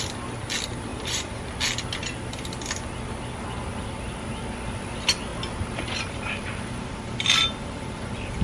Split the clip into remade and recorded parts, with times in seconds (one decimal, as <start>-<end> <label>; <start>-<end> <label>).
0.0-0.9 recorded; 0.9-1.4 remade; 1.4-5.3 recorded; 5.3-8.4 remade